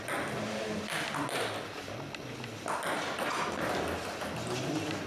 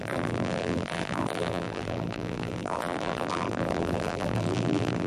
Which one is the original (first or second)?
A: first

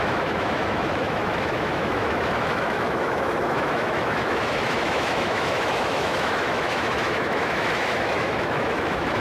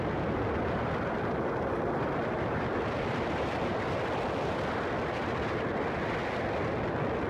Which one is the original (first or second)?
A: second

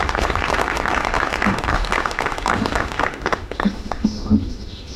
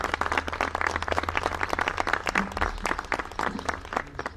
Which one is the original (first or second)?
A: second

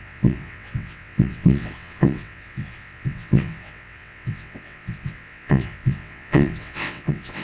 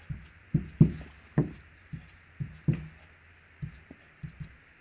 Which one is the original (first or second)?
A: second